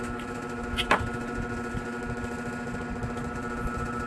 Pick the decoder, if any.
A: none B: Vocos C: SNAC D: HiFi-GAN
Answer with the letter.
A